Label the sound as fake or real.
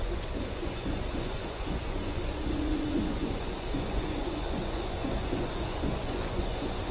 fake